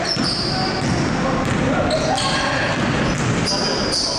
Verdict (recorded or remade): recorded